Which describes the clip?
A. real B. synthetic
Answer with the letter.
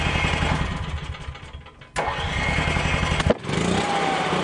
A